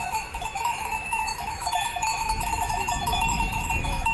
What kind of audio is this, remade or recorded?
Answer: remade